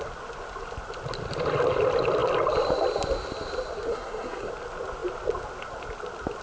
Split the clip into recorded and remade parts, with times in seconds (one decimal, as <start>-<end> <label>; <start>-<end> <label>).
0.0-3.9 recorded; 3.9-4.5 remade; 4.5-6.4 recorded